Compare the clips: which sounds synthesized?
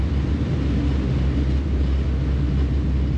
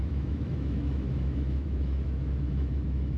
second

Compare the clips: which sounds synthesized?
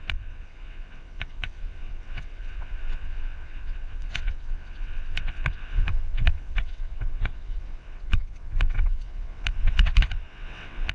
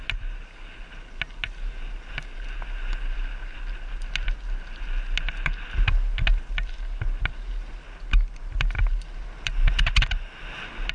first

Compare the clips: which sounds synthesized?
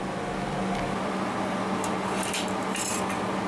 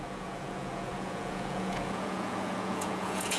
second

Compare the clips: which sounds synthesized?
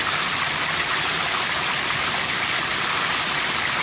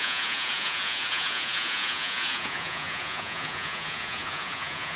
second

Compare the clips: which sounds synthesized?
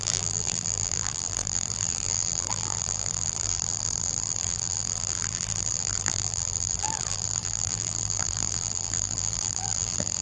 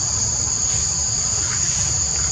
first